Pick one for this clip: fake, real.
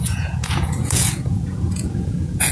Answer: fake